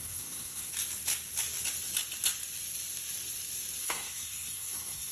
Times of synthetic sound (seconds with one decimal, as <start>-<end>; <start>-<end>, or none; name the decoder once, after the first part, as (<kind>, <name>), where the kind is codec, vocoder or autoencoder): 0.0-0.7 (codec, SNAC); 3.8-5.1